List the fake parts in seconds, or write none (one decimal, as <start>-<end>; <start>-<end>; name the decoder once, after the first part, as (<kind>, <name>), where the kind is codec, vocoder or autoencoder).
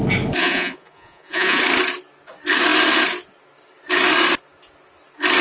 0.4-1.6 (vocoder, Vocos)